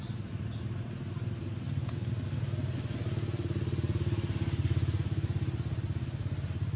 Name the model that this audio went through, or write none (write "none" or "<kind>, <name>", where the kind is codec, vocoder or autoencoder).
none